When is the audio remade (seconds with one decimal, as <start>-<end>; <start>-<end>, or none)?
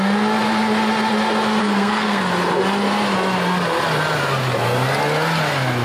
1.6-2.2